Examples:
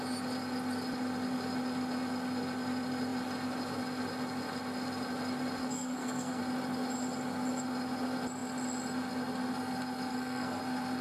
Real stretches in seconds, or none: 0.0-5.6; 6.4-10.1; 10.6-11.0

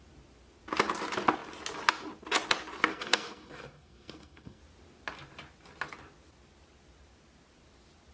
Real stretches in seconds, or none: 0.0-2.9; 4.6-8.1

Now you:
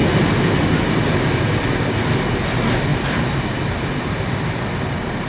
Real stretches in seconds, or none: 0.0-5.3